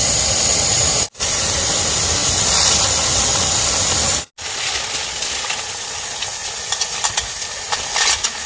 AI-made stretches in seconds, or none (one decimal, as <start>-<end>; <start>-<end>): 2.2-2.9; 6.4-8.1

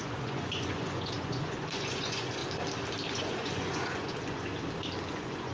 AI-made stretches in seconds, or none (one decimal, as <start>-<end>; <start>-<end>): 0.0-2.4; 3.1-4.5; 5.1-5.5